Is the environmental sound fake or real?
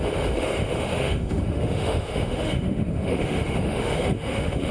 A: fake